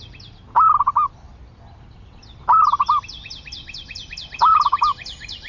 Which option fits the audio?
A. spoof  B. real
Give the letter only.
B